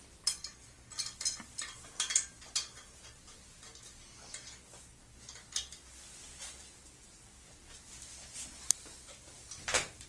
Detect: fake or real real